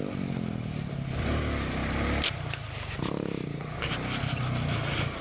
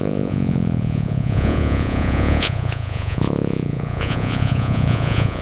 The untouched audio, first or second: first